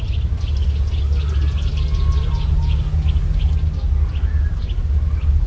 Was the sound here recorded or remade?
recorded